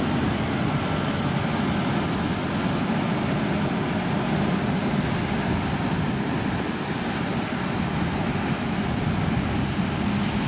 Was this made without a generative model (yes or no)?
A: yes